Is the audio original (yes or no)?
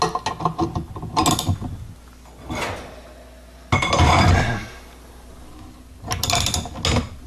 yes